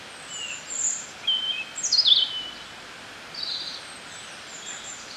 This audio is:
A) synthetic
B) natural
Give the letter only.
B